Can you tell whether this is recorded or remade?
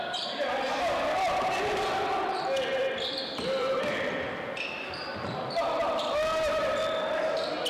recorded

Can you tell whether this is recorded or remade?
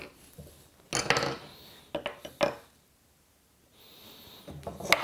recorded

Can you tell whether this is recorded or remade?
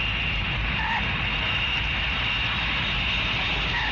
recorded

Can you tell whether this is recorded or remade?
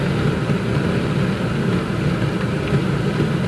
recorded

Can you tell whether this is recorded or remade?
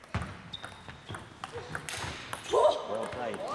recorded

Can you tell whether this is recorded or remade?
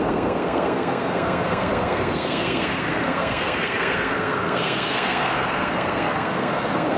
remade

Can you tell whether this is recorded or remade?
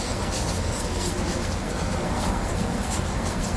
remade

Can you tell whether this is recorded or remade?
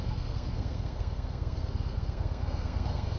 remade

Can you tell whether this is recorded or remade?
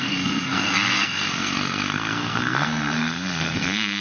remade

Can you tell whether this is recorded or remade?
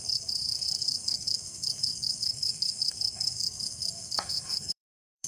remade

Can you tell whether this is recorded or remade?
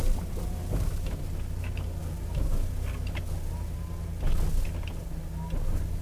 recorded